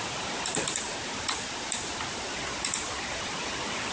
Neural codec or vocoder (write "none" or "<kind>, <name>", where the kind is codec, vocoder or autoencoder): none